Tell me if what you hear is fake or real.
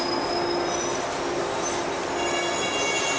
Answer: real